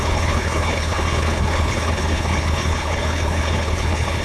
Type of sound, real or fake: fake